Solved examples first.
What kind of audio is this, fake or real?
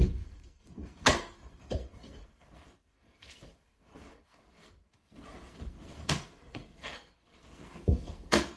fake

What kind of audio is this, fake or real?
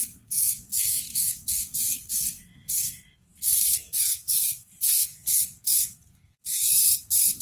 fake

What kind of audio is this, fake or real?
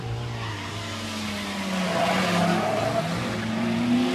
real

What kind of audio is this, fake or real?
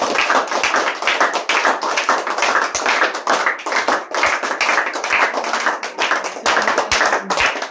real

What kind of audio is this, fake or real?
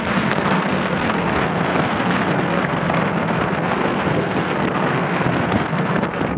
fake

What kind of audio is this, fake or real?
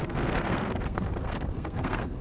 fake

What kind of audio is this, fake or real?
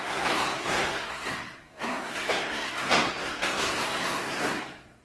fake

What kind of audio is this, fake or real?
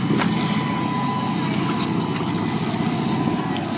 real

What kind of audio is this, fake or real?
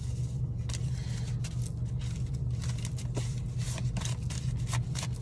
real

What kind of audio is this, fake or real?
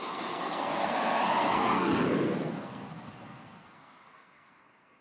fake